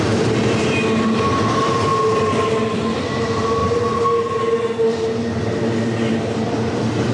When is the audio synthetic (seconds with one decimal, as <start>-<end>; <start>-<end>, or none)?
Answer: none